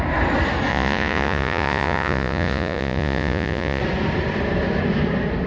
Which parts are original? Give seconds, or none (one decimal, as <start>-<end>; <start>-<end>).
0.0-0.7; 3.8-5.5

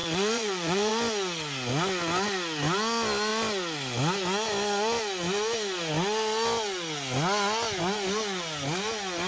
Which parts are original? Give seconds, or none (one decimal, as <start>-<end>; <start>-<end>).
0.9-9.3

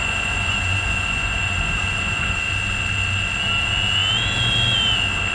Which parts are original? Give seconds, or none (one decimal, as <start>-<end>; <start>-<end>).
2.4-5.3

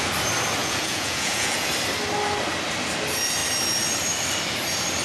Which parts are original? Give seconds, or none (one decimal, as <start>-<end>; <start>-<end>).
0.0-0.6; 1.7-5.0